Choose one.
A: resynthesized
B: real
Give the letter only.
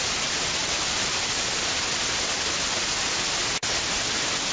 B